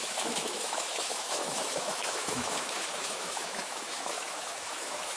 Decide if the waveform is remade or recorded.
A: remade